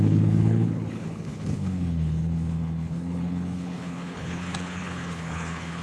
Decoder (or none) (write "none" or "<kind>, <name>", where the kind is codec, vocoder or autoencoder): codec, HILCodec